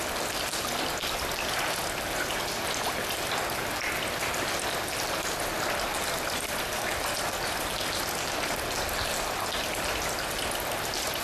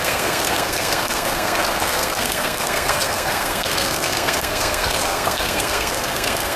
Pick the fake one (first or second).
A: second